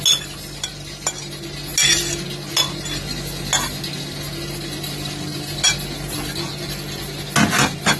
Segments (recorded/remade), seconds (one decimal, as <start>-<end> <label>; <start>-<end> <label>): 0.0-8.0 recorded